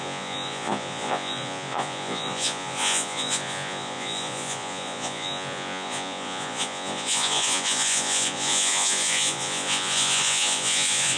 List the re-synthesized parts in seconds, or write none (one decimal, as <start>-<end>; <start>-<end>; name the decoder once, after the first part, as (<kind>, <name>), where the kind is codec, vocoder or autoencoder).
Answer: 0.0-11.2 (vocoder, Vocos)